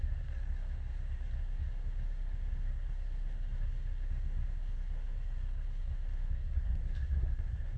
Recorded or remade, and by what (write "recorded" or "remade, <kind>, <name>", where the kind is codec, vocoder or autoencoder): remade, codec, SNAC